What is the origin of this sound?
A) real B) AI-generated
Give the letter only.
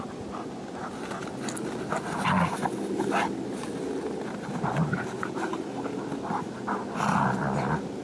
A